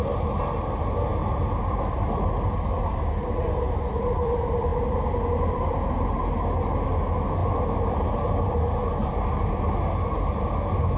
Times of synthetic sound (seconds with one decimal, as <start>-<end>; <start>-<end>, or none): 8.8-9.5